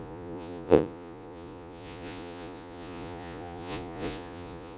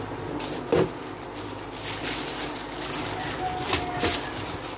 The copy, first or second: first